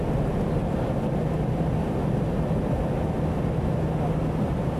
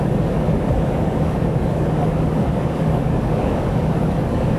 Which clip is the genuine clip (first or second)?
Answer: first